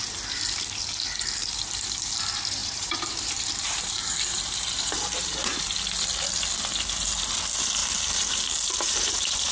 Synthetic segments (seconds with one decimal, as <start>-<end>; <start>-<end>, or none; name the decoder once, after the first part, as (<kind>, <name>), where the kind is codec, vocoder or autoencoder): 1.4-2.1 (vocoder, BigVGAN v2); 2.6-5.6; 7.8-9.5